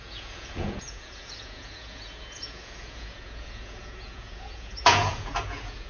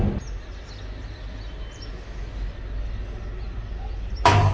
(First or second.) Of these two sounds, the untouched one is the second